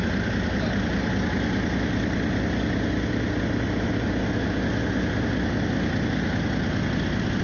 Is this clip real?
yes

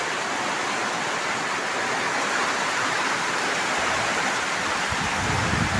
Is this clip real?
yes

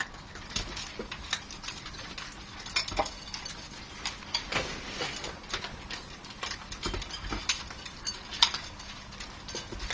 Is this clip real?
yes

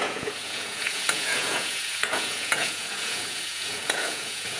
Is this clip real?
no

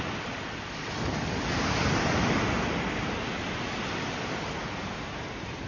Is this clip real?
yes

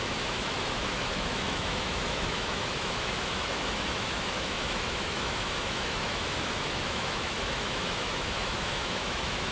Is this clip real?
no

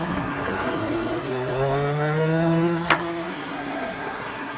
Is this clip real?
no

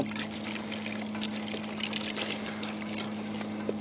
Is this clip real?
yes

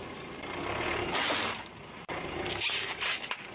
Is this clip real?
yes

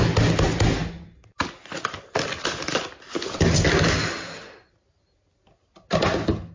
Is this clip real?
yes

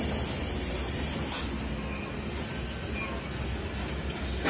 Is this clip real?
yes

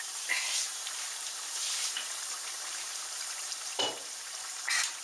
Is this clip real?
no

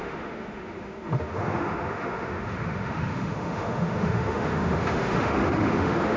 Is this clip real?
no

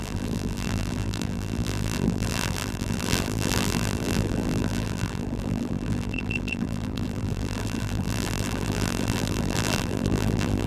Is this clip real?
no